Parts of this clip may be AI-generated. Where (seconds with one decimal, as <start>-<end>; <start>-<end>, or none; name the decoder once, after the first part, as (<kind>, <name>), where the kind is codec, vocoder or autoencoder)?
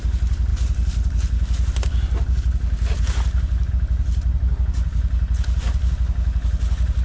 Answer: none